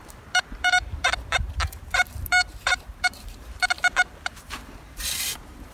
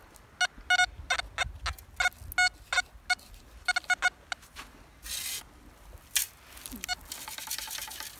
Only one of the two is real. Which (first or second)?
second